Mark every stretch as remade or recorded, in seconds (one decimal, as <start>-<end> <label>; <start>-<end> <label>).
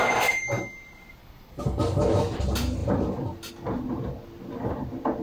0.0-1.2 recorded; 1.2-2.0 remade; 2.0-5.2 recorded